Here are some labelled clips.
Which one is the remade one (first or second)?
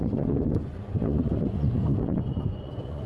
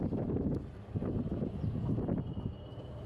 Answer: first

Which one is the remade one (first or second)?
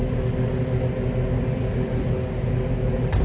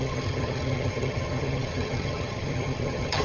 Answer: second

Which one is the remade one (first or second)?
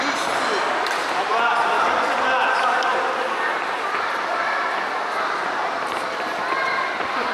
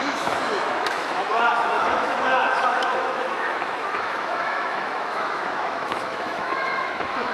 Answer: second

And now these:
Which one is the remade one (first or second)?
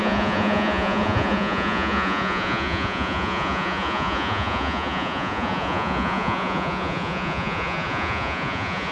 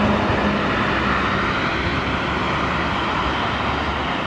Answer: first